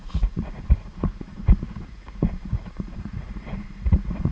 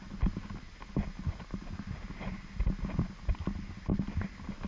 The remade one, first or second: first